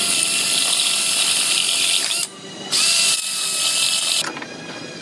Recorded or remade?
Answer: recorded